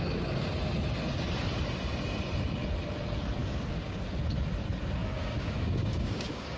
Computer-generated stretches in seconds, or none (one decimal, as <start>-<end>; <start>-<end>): 3.4-4.2; 5.0-6.6